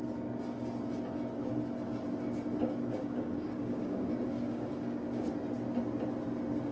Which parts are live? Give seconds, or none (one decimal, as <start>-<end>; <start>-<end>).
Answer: 0.0-2.6; 5.3-6.7